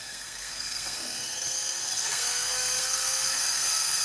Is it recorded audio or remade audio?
remade